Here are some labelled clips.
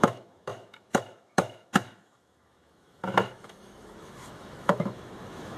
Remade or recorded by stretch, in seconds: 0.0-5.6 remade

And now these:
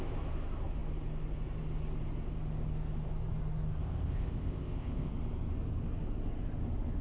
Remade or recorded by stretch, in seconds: 0.0-3.8 recorded; 3.8-5.1 remade; 5.1-7.0 recorded

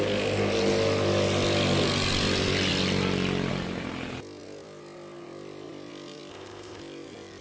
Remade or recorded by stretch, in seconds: 0.0-6.3 recorded; 6.3-6.8 remade; 6.8-7.4 recorded

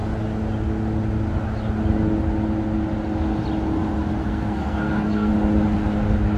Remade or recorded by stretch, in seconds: 0.0-4.2 recorded; 4.2-5.3 remade; 5.3-6.4 recorded

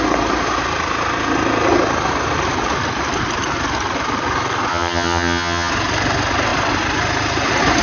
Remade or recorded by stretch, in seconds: 0.0-4.7 recorded; 4.7-5.7 remade; 5.7-7.8 recorded